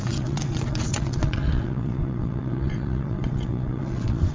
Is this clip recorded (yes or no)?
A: no